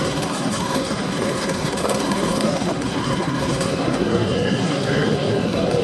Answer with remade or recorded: remade